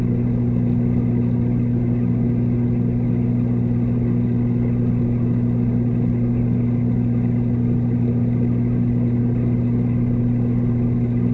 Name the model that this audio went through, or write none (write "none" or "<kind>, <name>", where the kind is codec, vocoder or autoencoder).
none